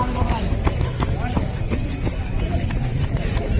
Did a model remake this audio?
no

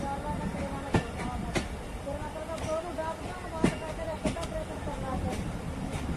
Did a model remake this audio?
no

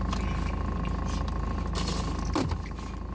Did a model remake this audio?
no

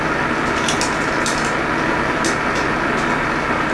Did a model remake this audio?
no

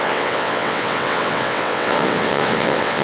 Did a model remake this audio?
yes